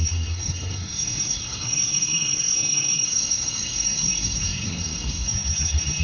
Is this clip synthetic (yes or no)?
yes